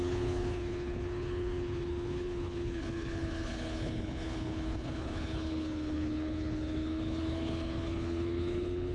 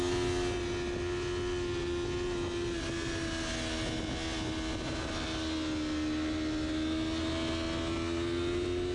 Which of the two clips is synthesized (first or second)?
first